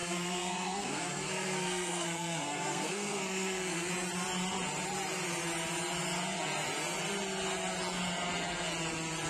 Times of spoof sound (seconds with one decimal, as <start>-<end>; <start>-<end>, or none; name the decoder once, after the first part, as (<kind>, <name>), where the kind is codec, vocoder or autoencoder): 0.0-3.9 (codec, SNAC)